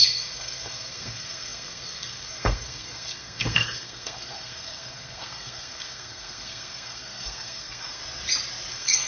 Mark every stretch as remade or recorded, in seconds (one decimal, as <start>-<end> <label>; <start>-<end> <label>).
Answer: 0.0-8.0 remade; 8.0-8.7 recorded; 8.7-9.1 remade